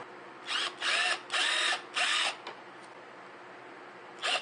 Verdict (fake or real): real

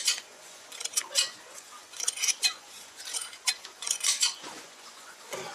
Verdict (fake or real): fake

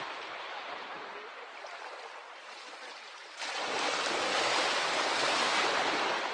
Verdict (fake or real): fake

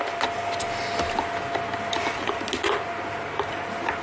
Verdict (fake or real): real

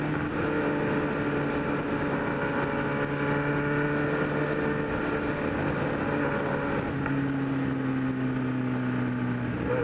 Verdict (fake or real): real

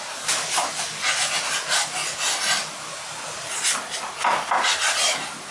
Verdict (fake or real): real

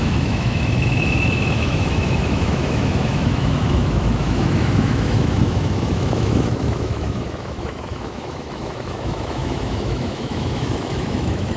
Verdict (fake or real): fake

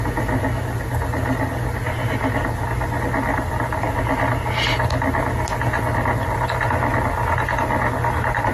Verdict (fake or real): real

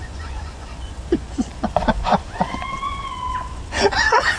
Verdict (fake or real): fake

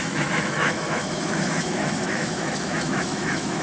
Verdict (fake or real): fake